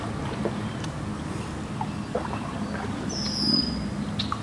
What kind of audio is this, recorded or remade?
recorded